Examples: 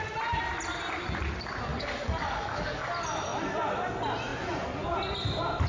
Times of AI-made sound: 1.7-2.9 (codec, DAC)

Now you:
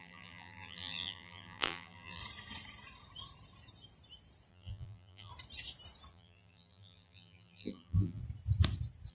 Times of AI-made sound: 0.0-2.2 (vocoder, BigVGAN v2); 4.5-5.3; 6.1-8.2

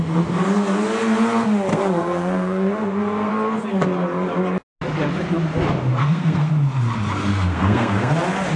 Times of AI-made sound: 1.7-3.3 (codec, SNAC); 6.0-6.5; 7.3-8.1

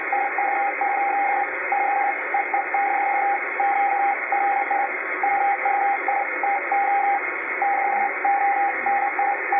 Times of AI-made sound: none

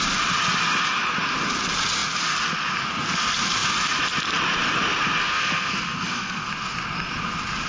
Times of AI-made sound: 5.2-6.5 (codec, SNAC)

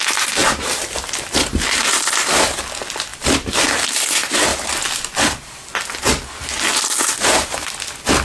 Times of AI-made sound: 0.4-2.6 (vocoder, BigVGAN v2); 3.1-3.9; 4.5-6.0

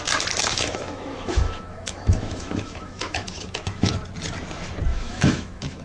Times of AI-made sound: 0.4-3.9 (autoencoder, DAC-VAE); 4.9-5.8